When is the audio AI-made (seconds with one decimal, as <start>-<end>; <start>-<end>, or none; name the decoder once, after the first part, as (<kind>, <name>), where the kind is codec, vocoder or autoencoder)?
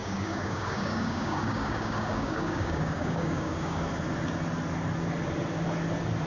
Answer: 0.0-3.8 (codec, DAC)